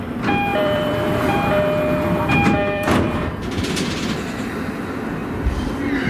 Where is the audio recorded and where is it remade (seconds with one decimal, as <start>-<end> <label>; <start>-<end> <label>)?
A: 0.0-0.5 recorded; 0.5-1.5 remade; 1.5-2.1 recorded; 2.1-3.9 remade; 3.9-6.1 recorded